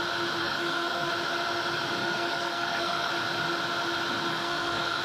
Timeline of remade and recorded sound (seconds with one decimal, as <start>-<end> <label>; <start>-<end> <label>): 0.0-0.4 recorded; 0.4-1.1 remade; 1.1-2.0 recorded; 2.0-3.1 remade; 3.1-4.3 recorded; 4.3-5.0 remade